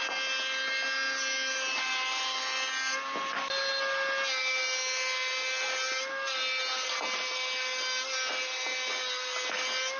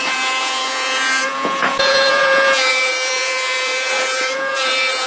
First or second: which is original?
first